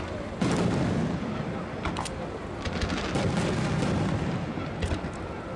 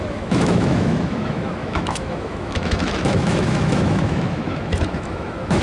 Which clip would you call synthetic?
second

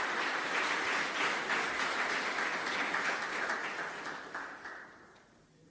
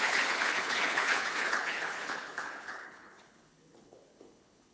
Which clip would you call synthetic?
second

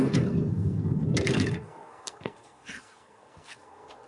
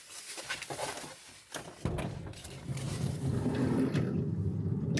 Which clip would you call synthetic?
first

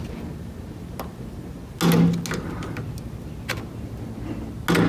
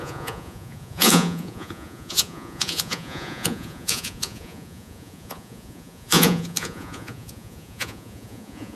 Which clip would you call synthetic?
second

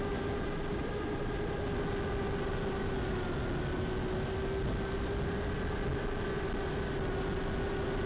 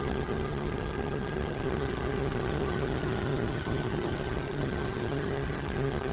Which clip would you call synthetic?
second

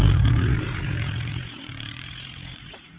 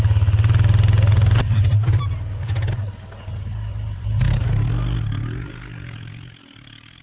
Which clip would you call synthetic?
first